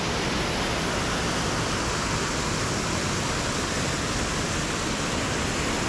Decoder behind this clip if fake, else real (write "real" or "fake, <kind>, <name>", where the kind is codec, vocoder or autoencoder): real